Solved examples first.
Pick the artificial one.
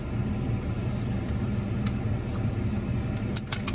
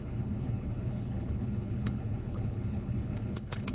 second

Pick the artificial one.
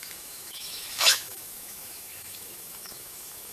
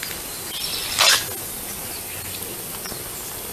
first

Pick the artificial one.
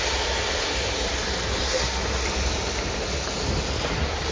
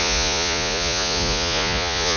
second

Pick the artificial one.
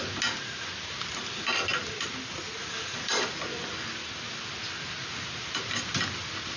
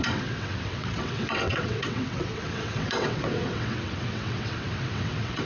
second